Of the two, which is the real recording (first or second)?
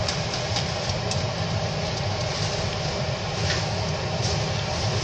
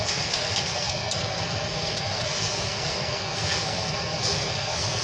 first